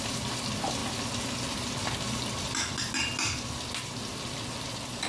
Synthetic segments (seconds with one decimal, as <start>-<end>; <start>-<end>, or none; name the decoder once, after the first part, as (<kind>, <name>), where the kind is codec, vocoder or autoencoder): none